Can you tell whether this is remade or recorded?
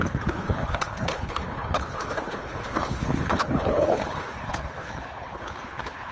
remade